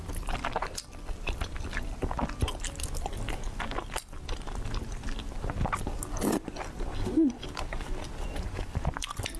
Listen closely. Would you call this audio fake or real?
real